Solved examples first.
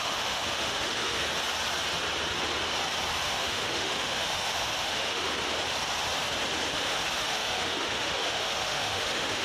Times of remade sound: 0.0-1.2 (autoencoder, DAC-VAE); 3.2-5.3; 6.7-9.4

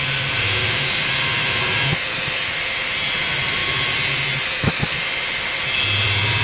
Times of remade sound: none